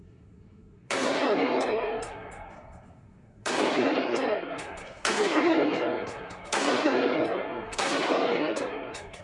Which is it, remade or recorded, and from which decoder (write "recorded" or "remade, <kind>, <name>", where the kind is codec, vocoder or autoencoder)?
remade, codec, SNAC